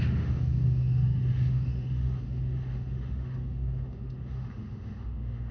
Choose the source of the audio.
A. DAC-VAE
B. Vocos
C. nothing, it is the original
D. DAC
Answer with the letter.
A